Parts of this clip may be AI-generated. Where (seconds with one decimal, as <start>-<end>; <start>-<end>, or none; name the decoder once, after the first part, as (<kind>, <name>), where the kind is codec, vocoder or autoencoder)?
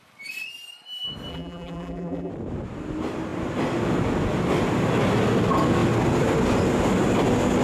1.3-2.3 (vocoder, BigVGAN v2)